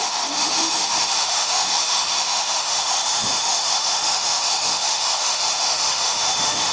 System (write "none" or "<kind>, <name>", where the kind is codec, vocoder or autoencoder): autoencoder, DAC-VAE